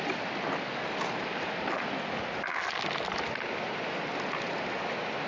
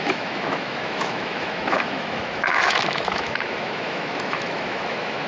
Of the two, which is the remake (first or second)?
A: second